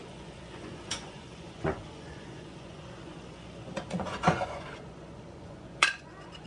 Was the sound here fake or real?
fake